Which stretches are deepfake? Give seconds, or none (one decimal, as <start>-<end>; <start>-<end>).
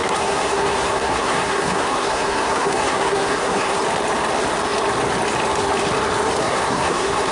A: 0.0-3.8; 6.4-7.3